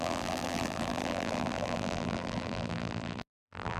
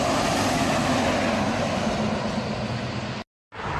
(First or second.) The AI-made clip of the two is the first